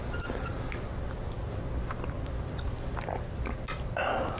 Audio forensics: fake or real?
real